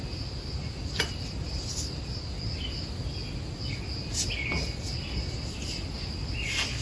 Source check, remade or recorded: recorded